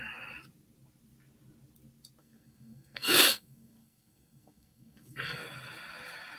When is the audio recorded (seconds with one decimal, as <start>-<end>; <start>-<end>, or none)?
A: 0.0-2.2; 5.4-6.4